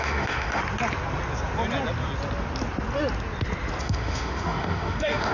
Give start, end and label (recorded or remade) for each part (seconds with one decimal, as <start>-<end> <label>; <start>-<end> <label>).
0.0-0.6 remade; 0.6-3.8 recorded; 3.8-5.3 remade